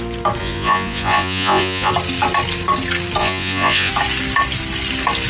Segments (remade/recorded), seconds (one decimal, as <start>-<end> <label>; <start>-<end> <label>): 0.0-0.4 recorded; 0.4-1.9 remade; 1.9-3.2 recorded; 3.2-3.9 remade; 3.9-5.3 recorded